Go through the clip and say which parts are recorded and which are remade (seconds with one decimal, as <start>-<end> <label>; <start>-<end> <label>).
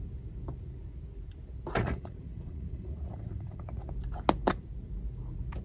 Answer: 0.0-1.8 recorded; 1.8-3.9 remade; 3.9-5.6 recorded